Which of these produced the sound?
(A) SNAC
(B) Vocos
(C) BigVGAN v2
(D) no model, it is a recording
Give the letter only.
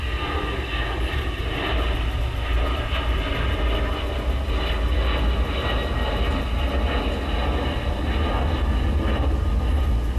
D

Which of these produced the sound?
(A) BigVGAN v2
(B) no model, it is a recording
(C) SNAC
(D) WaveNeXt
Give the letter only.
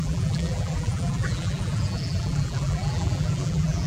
A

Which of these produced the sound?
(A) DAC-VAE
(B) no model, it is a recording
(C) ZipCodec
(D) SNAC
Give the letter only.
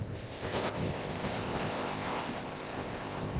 C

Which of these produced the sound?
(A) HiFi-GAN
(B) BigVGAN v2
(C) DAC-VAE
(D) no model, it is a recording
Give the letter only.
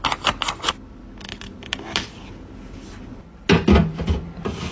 D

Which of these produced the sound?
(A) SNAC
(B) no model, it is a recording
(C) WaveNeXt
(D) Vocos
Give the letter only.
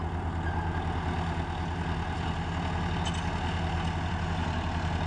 B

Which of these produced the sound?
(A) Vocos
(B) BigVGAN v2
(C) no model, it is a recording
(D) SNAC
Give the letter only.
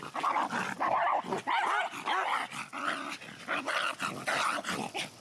C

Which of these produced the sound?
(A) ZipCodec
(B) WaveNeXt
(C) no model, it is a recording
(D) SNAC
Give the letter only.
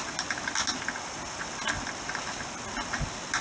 C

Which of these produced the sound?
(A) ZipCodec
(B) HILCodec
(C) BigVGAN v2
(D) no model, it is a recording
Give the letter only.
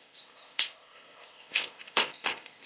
A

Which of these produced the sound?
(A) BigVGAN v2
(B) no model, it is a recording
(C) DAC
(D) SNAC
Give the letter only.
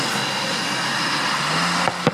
B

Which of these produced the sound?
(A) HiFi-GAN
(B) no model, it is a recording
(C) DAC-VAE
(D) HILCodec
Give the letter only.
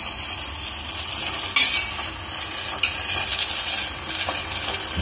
B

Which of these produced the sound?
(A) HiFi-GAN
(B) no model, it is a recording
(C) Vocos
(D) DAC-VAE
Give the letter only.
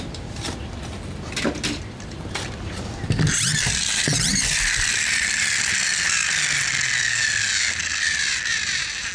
B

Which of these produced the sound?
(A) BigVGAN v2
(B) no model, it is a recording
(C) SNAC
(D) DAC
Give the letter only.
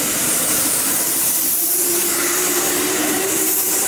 A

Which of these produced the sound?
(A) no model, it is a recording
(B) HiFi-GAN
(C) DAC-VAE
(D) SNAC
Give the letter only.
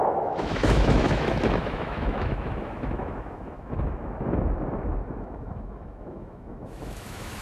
C